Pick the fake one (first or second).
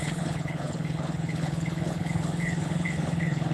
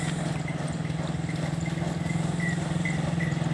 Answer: first